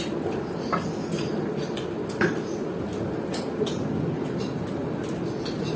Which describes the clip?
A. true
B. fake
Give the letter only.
A